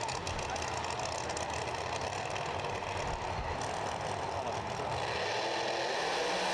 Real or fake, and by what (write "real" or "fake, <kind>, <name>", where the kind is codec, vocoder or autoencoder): real